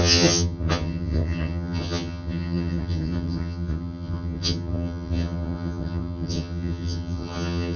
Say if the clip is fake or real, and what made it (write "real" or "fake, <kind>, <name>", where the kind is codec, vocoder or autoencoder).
fake, vocoder, HiFi-GAN